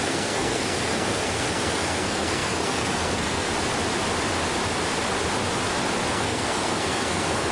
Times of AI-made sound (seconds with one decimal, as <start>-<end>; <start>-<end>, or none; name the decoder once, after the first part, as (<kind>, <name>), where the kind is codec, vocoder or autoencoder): 0.0-3.5 (codec, SNAC); 6.1-7.5